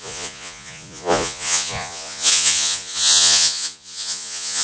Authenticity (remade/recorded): remade